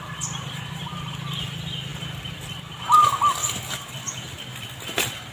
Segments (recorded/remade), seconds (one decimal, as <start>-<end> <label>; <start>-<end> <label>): 0.0-5.3 recorded